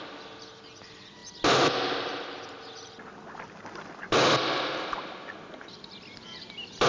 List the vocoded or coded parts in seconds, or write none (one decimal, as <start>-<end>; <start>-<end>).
none